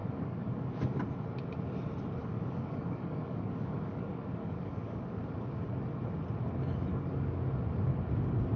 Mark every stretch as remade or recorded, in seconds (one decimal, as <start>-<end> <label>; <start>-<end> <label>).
0.0-0.7 remade; 0.7-2.2 recorded; 2.2-5.2 remade; 5.2-6.9 recorded; 6.9-7.4 remade; 7.4-8.6 recorded

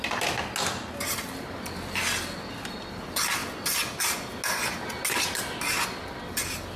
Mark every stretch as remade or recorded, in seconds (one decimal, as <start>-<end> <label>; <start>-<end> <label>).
0.0-6.8 recorded

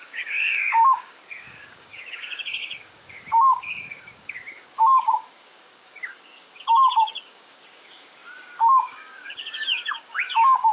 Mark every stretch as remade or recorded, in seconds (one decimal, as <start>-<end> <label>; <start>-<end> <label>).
0.0-10.7 remade

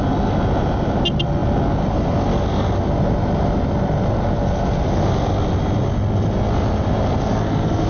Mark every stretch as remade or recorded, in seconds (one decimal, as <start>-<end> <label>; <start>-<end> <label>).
0.0-7.9 recorded